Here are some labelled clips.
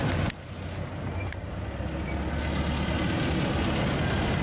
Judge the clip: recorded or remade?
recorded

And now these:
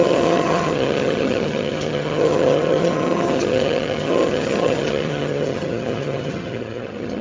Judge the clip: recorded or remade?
remade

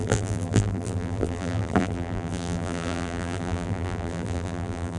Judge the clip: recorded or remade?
remade